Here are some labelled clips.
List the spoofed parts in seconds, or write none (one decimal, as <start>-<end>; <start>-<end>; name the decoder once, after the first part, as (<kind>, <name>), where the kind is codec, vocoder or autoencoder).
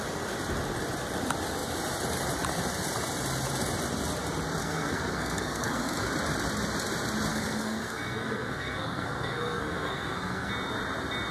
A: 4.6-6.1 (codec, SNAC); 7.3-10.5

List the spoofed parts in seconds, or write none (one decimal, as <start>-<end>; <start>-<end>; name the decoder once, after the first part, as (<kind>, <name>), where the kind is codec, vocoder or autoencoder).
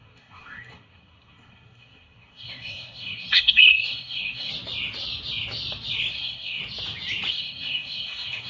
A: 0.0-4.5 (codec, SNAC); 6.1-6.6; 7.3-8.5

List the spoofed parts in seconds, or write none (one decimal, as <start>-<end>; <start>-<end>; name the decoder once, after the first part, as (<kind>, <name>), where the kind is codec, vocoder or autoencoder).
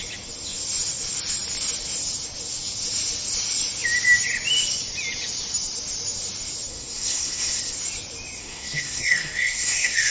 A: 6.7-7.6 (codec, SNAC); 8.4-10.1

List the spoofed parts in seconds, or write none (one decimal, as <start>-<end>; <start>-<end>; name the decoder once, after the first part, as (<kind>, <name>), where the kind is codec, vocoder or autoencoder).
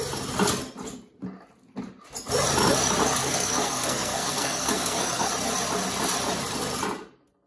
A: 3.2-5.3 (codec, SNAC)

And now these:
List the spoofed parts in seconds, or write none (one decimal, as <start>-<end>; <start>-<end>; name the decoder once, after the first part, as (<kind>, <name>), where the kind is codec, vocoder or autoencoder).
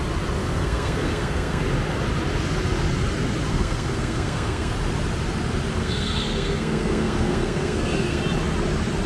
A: 0.4-1.6 (codec, SNAC); 3.5-4.7; 5.8-8.2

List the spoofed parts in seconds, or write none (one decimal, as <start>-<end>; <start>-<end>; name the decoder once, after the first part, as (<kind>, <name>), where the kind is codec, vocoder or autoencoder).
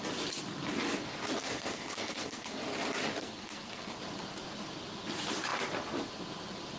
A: 1.4-2.6 (codec, SNAC); 3.2-4.0